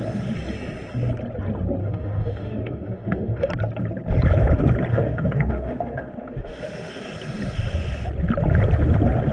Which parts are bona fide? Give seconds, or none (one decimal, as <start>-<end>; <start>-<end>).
0.0-1.8; 3.5-4.9; 7.0-9.3